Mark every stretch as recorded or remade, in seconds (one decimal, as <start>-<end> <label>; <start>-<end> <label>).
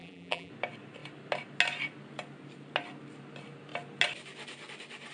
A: 0.0-0.5 remade; 0.5-5.1 recorded